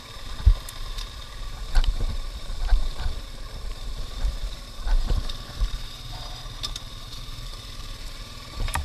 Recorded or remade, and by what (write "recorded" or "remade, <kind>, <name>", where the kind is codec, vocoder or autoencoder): remade, vocoder, BigVGAN v2